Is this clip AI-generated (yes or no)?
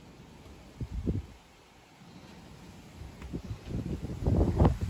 no